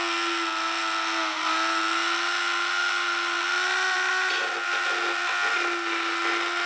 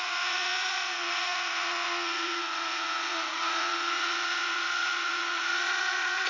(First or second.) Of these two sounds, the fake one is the second